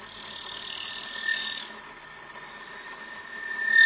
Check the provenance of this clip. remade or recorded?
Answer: recorded